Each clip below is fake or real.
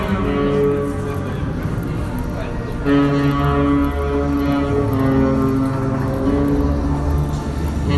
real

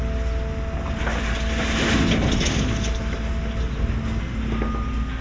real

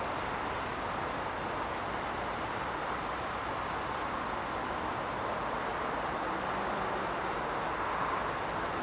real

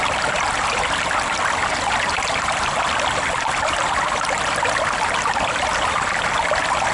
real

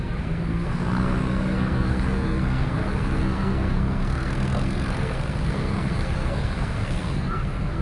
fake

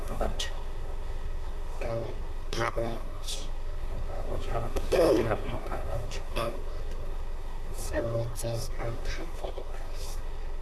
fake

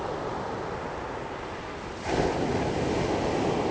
real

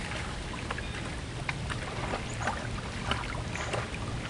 real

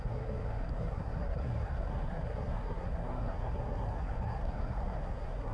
fake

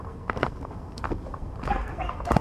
fake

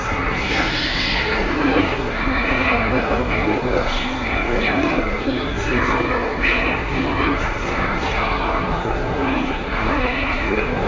fake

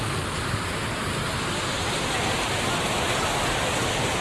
real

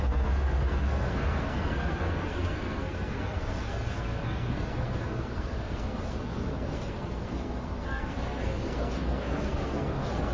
fake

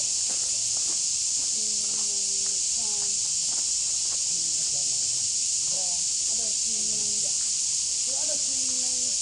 real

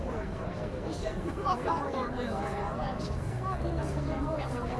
fake